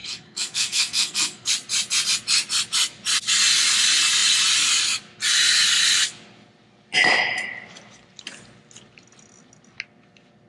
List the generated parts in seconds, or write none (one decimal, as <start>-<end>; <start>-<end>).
0.0-1.5

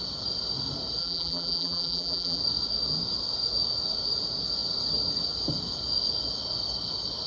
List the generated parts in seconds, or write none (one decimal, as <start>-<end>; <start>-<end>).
1.0-2.4

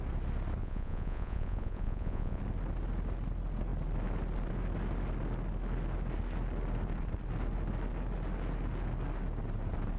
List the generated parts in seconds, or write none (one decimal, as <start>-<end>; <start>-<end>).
0.6-2.4

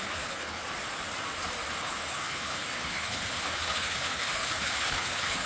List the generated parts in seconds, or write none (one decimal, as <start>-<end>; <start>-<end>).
0.0-0.6; 1.8-5.5

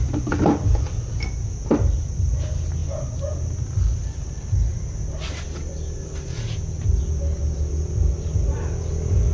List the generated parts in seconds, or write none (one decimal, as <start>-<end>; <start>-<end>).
none